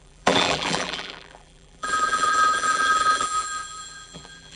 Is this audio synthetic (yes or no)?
yes